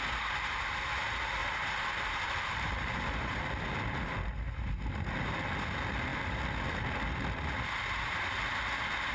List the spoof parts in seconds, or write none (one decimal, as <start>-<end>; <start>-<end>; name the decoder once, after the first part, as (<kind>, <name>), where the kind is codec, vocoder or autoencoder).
1.4-3.5 (vocoder, BigVGAN v2)